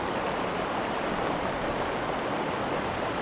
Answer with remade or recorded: recorded